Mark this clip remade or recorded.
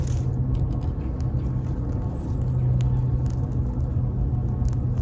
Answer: recorded